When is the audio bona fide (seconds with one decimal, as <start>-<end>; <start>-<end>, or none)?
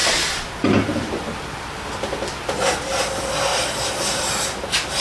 0.0-5.0